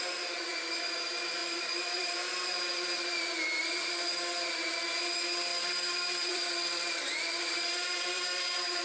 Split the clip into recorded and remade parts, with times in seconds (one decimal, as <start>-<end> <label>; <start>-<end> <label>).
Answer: 0.0-1.4 recorded; 1.4-2.2 remade; 2.2-5.5 recorded; 5.5-8.8 remade